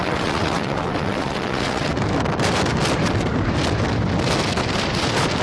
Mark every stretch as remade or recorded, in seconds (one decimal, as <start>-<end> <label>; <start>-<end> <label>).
0.0-1.9 remade; 1.9-5.4 recorded